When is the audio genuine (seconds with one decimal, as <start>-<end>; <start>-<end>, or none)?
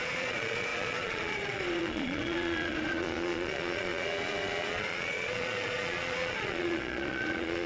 none